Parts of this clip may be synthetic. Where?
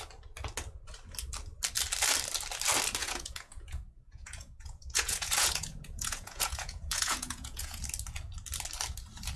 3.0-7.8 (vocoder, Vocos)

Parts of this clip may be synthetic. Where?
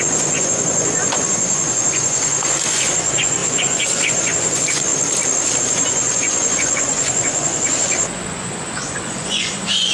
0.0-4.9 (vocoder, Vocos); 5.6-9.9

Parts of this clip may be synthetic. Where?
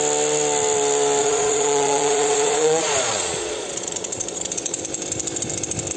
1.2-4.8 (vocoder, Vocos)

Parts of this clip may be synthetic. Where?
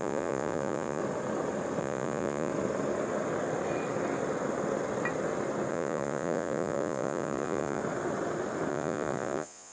0.0-1.0 (vocoder, Vocos); 1.8-2.5; 5.7-7.8; 8.7-9.7